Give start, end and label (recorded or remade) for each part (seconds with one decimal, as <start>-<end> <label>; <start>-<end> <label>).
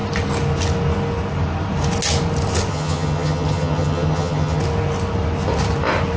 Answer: 0.0-2.7 recorded; 2.7-4.6 remade; 4.6-6.2 recorded